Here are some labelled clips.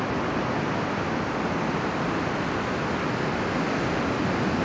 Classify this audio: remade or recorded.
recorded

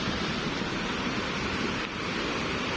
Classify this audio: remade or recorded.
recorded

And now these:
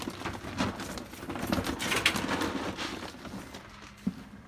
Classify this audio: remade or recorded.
recorded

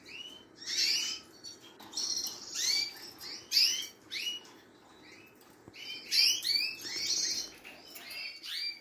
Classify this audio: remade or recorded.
recorded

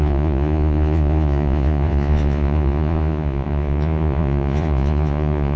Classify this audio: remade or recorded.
remade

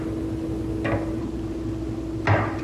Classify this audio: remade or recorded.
recorded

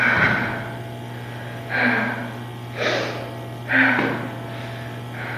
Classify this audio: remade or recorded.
recorded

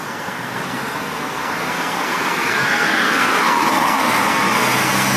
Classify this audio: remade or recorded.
remade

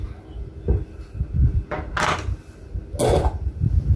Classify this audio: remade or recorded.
recorded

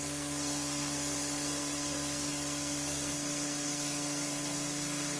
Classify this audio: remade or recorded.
remade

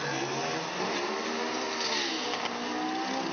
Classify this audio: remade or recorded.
recorded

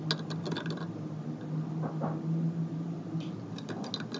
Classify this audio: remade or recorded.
recorded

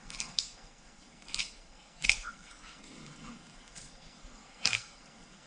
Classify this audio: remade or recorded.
remade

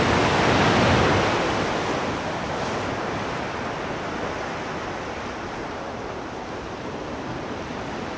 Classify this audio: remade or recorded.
recorded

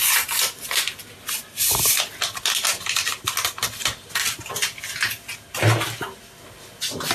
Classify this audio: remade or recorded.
recorded